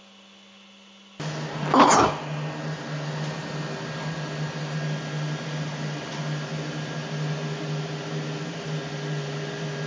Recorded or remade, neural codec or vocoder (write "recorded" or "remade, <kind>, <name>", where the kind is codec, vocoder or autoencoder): recorded